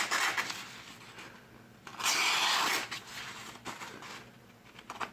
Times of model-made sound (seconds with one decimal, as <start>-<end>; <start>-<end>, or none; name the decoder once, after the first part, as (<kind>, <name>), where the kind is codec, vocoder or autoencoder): none